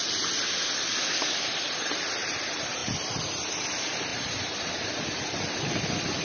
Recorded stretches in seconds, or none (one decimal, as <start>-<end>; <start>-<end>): 0.0-4.1; 4.6-6.2